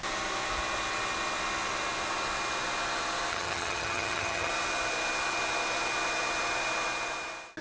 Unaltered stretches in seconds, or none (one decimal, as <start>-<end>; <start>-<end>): 0.0-3.3; 4.5-7.6